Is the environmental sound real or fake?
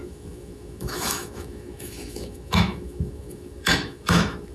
fake